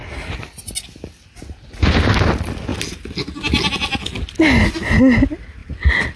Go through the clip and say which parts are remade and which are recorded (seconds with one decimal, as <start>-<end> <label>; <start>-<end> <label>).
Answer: 0.0-6.2 recorded